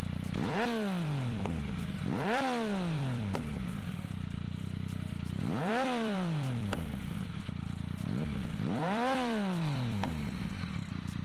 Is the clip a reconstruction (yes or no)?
yes